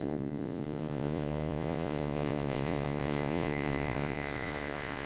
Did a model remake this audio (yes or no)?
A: yes